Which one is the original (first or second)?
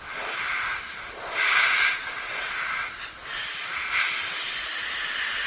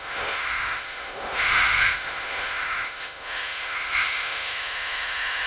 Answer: first